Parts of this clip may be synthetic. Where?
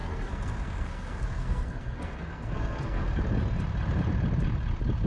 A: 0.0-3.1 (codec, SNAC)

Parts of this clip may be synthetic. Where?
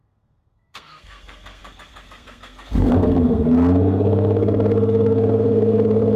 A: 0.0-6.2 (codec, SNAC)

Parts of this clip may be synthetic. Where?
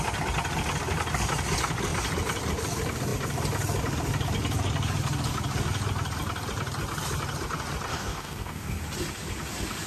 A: 7.9-8.8 (codec, DAC)